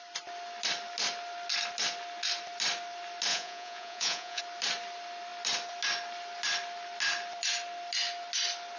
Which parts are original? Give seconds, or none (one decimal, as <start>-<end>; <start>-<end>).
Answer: 0.0-3.3; 4.4-8.8